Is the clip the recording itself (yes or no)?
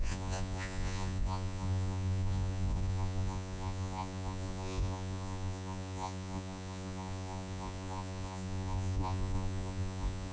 no